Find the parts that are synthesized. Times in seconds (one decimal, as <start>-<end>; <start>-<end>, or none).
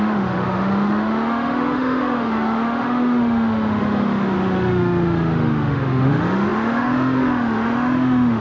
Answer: 0.0-8.4